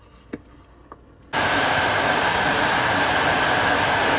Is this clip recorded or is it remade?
recorded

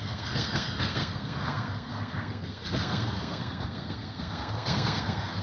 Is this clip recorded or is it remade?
remade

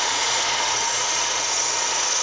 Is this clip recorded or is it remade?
remade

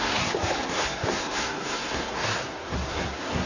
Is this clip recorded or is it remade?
remade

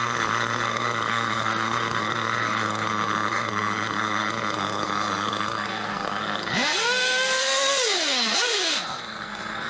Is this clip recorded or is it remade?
remade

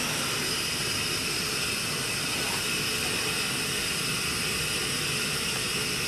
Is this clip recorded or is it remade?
recorded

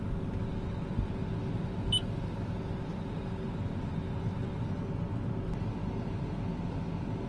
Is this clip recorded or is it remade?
recorded